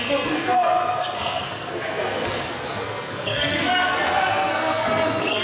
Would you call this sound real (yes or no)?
no